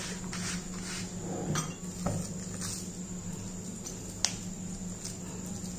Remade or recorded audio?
recorded